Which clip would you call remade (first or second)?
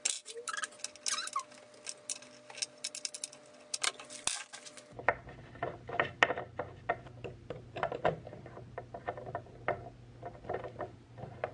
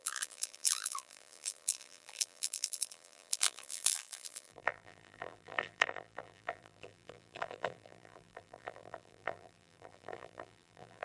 second